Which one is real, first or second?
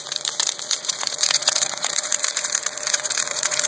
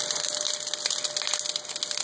second